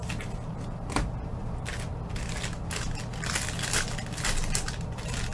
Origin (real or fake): real